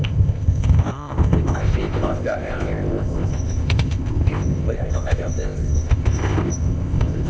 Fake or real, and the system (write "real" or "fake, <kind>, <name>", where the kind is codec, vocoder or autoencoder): fake, codec, ZipCodec